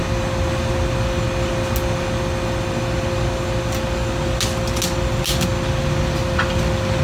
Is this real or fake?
real